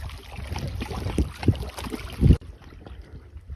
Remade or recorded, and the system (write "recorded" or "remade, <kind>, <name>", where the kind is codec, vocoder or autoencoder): recorded